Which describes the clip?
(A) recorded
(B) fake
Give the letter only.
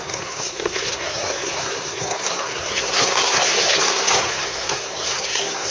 B